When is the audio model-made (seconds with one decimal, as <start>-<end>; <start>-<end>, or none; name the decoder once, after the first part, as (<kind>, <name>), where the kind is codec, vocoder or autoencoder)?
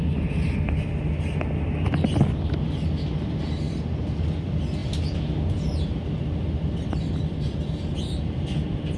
none